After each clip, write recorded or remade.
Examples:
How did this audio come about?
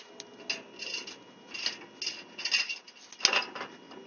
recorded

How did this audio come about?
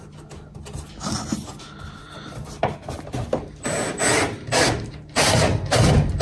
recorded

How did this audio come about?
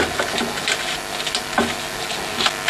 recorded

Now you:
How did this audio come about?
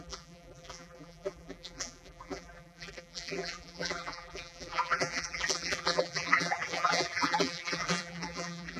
remade